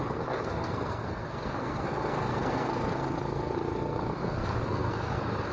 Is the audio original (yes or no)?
no